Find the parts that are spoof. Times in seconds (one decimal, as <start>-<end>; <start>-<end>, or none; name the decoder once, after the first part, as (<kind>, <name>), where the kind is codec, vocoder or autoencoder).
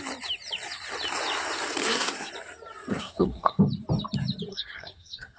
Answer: 1.8-2.3 (codec, SNAC); 2.9-3.6; 4.5-5.4